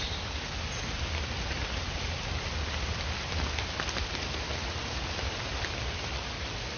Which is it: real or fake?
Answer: real